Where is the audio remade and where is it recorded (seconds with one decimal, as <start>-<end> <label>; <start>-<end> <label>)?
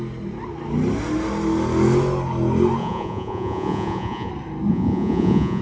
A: 0.0-2.8 recorded; 2.8-4.3 remade; 4.3-4.7 recorded; 4.7-5.6 remade